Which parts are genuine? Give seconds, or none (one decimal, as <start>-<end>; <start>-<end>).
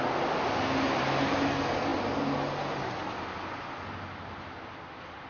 0.0-5.3